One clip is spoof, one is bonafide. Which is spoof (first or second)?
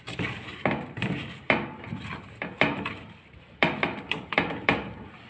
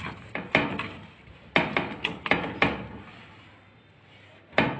first